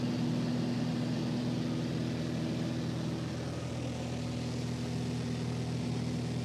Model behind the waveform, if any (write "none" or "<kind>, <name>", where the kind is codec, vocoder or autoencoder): none